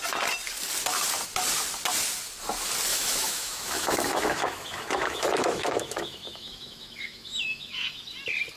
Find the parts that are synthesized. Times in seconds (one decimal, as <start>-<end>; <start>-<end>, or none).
2.9-8.0